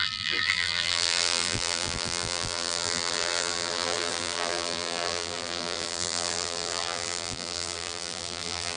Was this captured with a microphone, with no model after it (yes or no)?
no